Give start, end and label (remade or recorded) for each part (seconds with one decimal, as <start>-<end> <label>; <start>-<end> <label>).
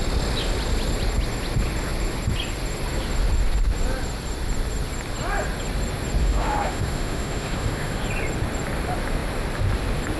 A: 0.0-6.2 recorded; 6.2-8.0 remade; 8.0-10.2 recorded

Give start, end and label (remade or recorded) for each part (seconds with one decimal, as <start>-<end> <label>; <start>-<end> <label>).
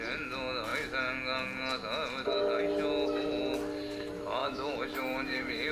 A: 0.0-4.4 recorded; 4.4-5.7 remade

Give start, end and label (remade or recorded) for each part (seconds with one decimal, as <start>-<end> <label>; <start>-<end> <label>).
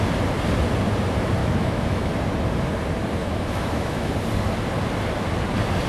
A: 0.0-1.4 recorded; 1.4-2.1 remade; 2.1-3.2 recorded; 3.2-4.1 remade; 4.1-5.9 recorded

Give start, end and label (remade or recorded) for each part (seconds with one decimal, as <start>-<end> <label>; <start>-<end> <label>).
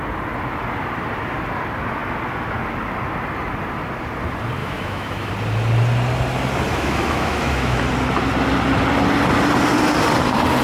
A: 0.0-4.6 recorded; 4.6-5.3 remade; 5.3-6.7 recorded; 6.7-7.8 remade; 7.8-10.6 recorded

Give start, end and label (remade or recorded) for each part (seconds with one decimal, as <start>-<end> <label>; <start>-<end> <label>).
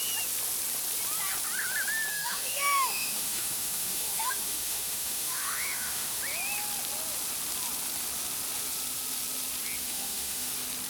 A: 0.0-2.1 recorded; 2.1-6.2 remade; 6.2-9.8 recorded; 9.8-10.5 remade; 10.5-10.9 recorded